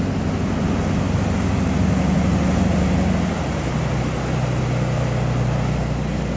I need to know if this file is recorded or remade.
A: recorded